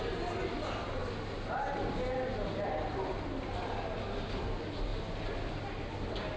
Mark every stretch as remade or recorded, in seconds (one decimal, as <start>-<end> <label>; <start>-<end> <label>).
0.0-6.4 recorded